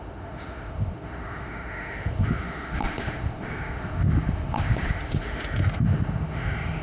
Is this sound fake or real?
fake